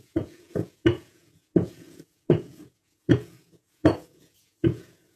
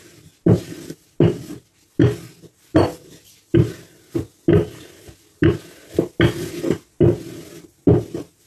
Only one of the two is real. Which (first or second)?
second